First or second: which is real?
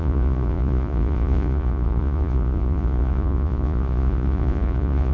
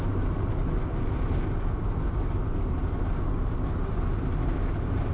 second